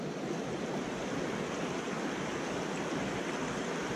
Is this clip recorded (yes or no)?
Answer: yes